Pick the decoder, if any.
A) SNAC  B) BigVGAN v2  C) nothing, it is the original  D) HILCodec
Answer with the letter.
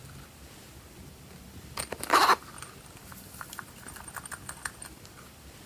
C